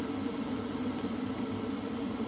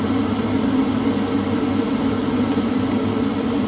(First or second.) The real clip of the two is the second